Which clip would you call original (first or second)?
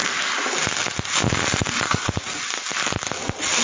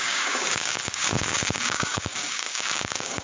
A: first